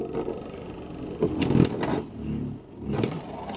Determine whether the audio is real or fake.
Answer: real